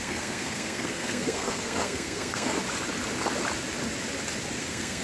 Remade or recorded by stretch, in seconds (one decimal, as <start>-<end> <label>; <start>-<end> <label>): 0.0-2.6 remade; 2.6-4.6 recorded; 4.6-5.0 remade